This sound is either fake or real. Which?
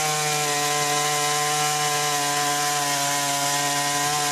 real